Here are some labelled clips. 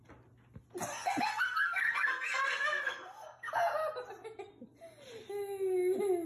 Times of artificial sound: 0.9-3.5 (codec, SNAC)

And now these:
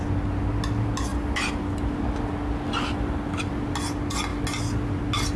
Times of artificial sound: none